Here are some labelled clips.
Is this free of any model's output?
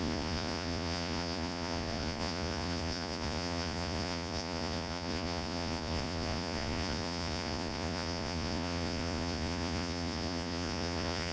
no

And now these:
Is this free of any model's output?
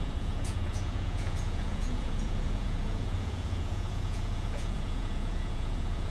no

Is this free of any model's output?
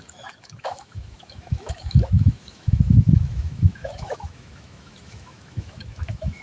no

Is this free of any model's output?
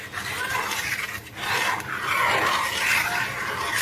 yes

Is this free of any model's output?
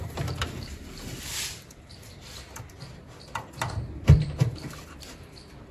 no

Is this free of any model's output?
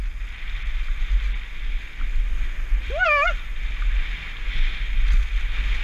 yes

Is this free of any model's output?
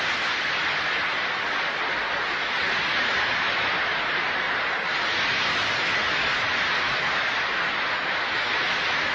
yes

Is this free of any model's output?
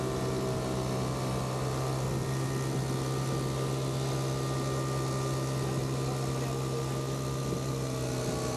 yes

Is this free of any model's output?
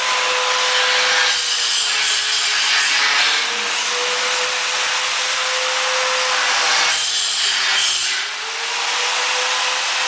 yes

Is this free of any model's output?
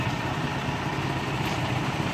yes